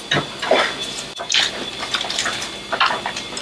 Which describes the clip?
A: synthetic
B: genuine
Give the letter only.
B